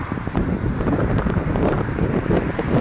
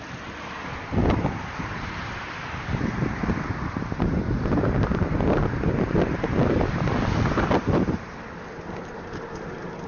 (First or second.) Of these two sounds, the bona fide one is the second